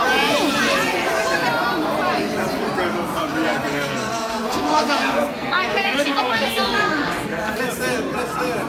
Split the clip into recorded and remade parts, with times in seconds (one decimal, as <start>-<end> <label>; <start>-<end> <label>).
0.0-3.7 recorded; 3.7-7.6 remade; 7.6-8.7 recorded